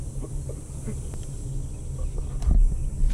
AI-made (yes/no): no